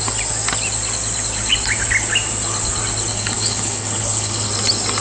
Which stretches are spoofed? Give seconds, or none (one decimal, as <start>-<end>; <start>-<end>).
3.1-4.5